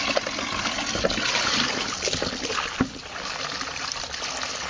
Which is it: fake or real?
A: real